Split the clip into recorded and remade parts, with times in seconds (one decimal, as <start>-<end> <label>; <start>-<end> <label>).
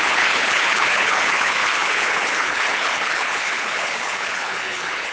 0.0-5.1 remade